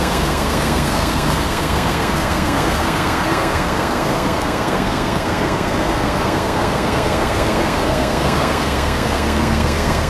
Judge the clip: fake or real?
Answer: fake